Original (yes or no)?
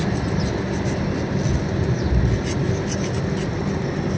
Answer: yes